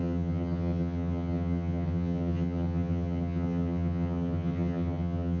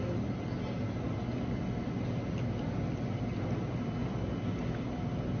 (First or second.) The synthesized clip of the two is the first